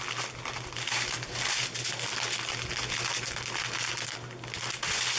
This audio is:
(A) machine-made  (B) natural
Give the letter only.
B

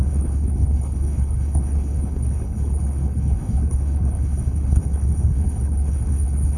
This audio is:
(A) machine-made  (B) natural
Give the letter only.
A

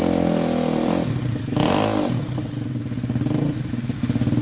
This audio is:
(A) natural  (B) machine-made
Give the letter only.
A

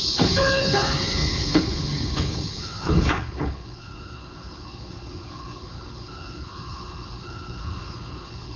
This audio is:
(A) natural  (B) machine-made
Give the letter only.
B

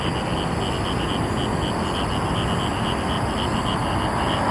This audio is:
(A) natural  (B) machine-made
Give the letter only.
A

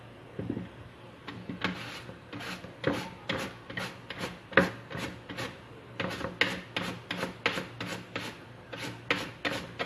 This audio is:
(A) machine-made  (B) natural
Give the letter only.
B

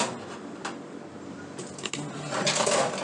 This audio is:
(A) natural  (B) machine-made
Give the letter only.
A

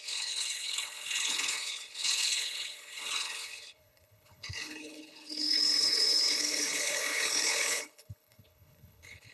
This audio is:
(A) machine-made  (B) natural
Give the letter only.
A